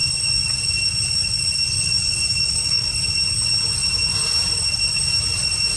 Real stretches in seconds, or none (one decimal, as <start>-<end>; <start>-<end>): 0.0-2.3; 2.9-5.8